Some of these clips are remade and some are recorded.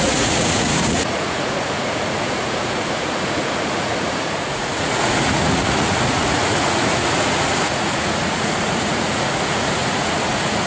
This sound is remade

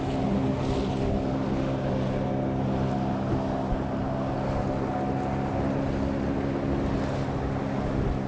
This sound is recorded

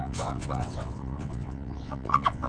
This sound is remade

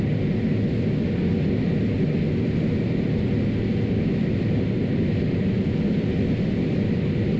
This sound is recorded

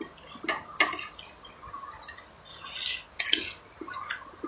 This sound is recorded